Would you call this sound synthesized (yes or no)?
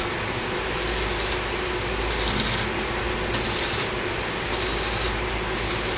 no